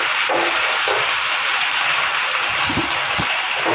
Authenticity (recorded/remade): remade